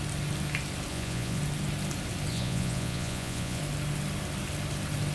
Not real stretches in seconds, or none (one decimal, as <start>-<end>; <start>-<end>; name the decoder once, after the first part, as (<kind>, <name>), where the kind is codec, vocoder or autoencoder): 0.9-1.4 (vocoder, Vocos); 2.3-3.6

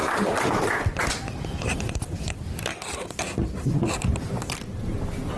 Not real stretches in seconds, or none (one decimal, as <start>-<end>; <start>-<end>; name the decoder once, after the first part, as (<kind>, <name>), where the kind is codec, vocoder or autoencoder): none

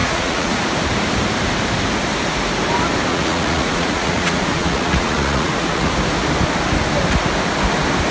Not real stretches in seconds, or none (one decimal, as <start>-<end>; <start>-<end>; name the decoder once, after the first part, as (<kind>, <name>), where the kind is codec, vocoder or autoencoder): 0.0-0.6 (vocoder, Vocos); 3.1-5.9